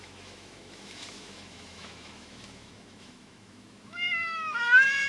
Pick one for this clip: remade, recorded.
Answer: remade